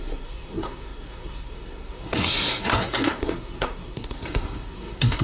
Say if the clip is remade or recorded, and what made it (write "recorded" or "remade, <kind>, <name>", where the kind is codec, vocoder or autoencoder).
remade, codec, SNAC